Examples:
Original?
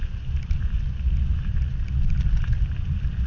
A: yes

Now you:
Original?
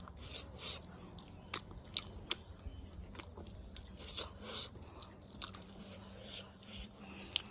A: yes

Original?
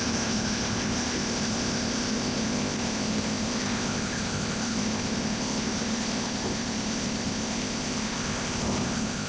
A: no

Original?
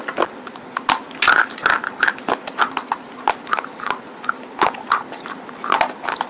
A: yes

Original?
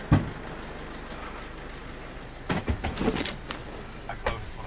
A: yes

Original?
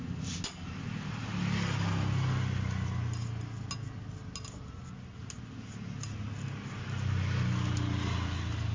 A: yes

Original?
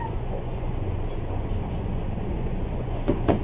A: no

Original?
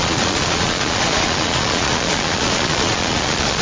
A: no